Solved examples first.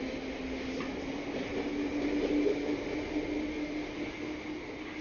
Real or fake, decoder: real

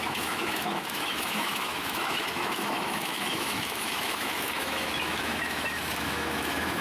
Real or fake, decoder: fake, autoencoder, DAC-VAE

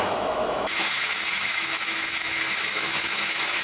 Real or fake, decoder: fake, autoencoder, DAC-VAE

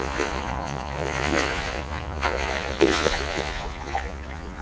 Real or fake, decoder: fake, vocoder, Vocos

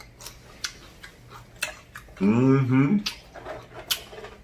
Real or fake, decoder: real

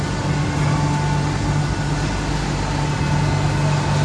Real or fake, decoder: real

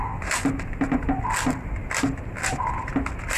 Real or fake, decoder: real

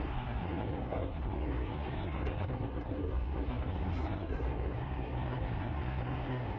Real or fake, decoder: fake, codec, SNAC